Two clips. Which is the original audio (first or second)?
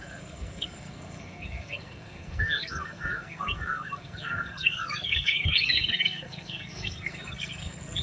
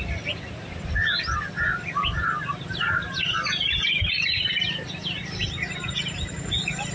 second